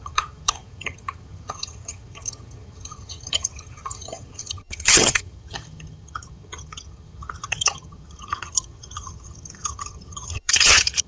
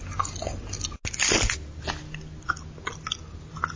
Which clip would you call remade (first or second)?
first